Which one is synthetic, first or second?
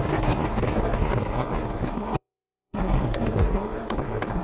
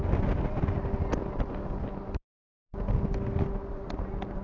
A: first